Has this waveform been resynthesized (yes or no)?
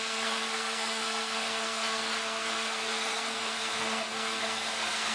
yes